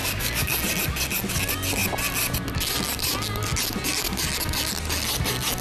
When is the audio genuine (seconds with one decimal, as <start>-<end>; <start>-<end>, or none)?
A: 0.5-5.6